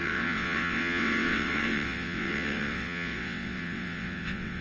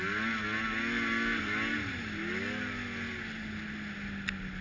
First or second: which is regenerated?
first